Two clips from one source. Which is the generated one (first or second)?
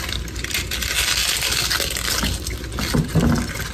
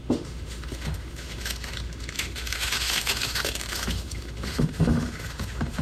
second